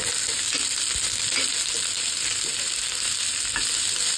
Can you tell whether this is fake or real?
real